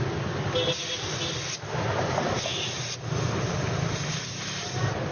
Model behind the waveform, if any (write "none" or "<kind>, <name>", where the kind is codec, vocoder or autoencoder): none